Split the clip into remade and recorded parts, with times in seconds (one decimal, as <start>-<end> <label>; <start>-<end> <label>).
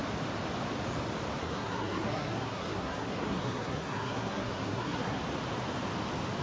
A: 0.0-1.4 recorded; 1.4-5.2 remade; 5.2-6.4 recorded